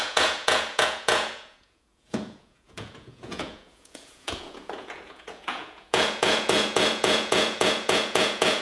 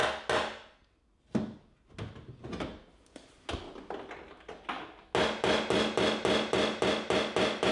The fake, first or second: first